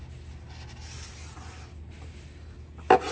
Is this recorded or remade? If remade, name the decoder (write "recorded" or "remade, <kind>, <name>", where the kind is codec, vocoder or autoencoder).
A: recorded